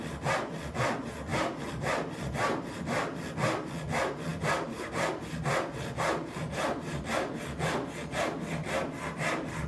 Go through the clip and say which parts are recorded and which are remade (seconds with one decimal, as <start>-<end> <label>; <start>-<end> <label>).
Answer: 0.0-1.3 recorded; 1.3-3.3 remade; 3.3-4.3 recorded; 4.3-5.1 remade; 5.1-9.7 recorded

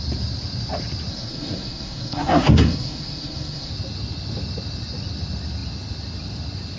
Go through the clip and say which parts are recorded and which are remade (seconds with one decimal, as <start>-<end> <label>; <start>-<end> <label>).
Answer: 0.0-1.1 recorded; 1.1-3.7 remade; 3.7-6.8 recorded

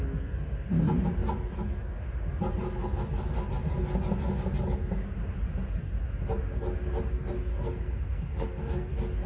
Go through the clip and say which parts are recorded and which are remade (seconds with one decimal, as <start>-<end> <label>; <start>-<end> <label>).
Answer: 0.0-7.5 recorded; 7.5-8.9 remade; 8.9-9.3 recorded

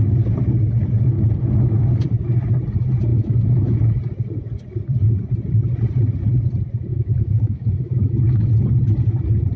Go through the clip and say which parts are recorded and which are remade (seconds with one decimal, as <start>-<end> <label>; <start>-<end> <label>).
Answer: 0.0-3.1 recorded; 3.1-4.0 remade; 4.0-6.9 recorded; 6.9-8.5 remade; 8.5-9.6 recorded

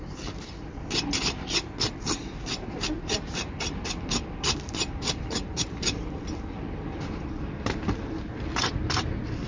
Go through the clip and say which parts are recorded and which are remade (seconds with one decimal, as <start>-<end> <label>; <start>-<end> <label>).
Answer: 0.0-2.2 remade; 2.2-3.1 recorded; 3.1-9.5 remade

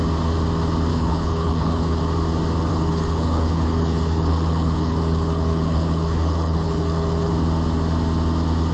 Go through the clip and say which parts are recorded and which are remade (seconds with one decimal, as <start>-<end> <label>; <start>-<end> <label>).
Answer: 0.0-0.9 recorded; 0.9-2.0 remade; 2.0-2.7 recorded; 2.7-7.3 remade; 7.3-8.7 recorded

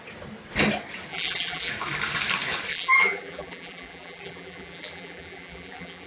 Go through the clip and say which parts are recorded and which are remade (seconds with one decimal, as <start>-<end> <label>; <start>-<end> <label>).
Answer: 0.0-1.1 recorded; 1.1-1.7 remade; 1.7-2.7 recorded; 2.7-6.1 remade